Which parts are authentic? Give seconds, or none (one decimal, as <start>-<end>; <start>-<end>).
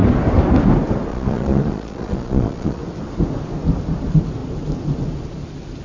0.0-1.1; 2.8-5.8